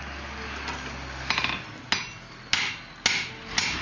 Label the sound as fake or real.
real